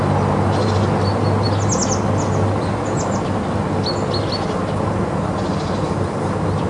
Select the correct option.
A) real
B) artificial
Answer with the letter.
A